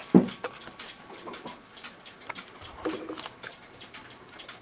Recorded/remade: recorded